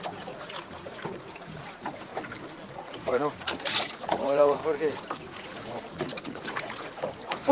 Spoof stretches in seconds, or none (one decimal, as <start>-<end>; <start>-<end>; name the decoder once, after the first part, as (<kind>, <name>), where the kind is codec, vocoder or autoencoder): 0.0-2.1 (vocoder, Vocos); 2.7-4.6; 5.2-7.5